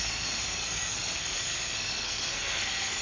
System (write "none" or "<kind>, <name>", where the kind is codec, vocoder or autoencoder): codec, SNAC